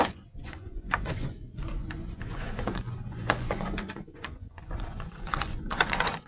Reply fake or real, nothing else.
fake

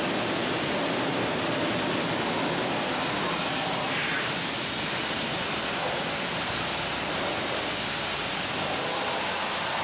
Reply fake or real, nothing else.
real